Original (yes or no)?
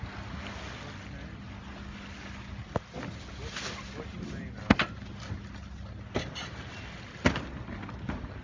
yes